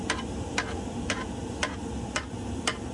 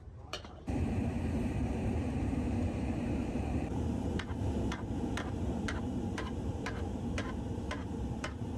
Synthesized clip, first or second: second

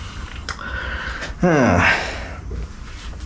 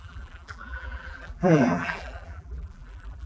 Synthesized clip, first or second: second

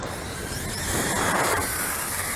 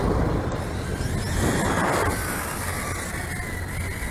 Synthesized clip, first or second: first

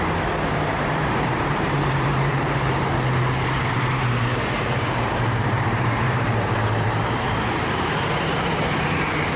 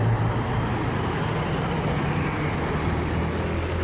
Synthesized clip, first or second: first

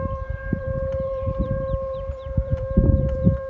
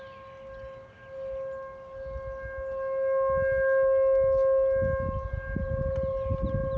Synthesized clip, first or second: first